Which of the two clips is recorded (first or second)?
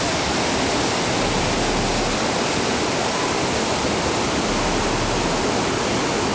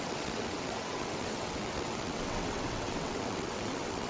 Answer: first